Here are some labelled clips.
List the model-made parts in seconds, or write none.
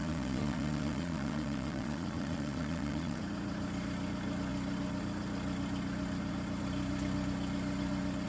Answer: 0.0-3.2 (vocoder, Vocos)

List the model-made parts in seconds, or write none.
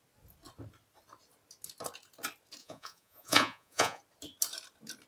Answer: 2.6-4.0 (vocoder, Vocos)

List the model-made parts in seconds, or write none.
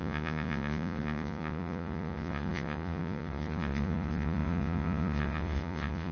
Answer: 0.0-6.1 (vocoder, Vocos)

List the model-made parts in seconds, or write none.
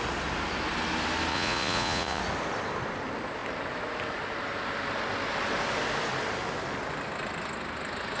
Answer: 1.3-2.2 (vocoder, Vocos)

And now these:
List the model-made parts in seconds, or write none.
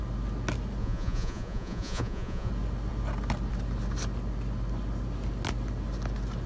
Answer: 0.8-2.5 (vocoder, Vocos)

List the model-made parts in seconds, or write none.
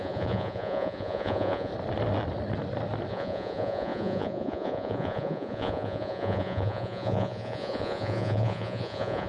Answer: 0.0-1.7 (vocoder, Vocos); 3.1-9.3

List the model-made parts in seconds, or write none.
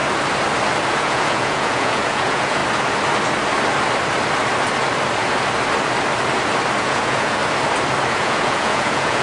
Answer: 0.9-2.6 (vocoder, Vocos); 6.8-7.4; 8.1-9.2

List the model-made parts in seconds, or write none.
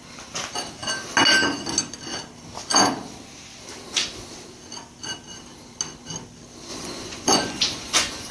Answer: 6.7-8.3 (vocoder, Vocos)